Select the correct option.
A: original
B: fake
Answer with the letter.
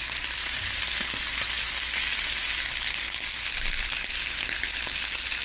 A